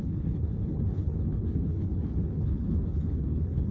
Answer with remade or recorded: remade